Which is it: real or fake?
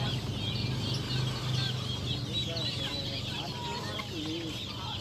real